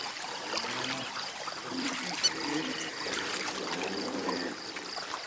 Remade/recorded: remade